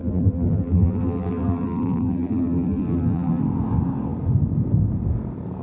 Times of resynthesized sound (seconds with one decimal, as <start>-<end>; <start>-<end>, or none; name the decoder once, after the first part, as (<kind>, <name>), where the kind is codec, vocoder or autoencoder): 0.0-3.4 (vocoder, BigVGAN v2)